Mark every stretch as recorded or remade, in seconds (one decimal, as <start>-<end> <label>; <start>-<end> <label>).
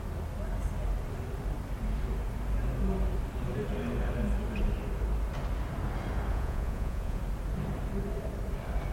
0.0-6.3 recorded; 6.3-7.2 remade; 7.2-8.9 recorded